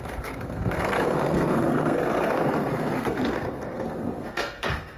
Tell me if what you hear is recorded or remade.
remade